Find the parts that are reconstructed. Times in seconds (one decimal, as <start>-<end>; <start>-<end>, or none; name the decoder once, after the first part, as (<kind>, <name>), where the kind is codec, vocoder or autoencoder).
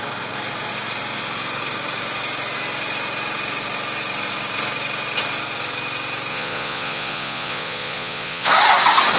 6.3-8.5 (vocoder, Vocos)